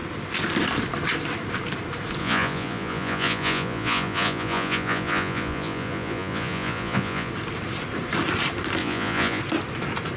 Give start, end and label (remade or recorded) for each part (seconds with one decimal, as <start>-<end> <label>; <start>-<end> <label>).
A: 0.0-2.2 recorded; 2.2-7.3 remade; 7.3-8.8 recorded; 8.8-9.4 remade; 9.4-10.2 recorded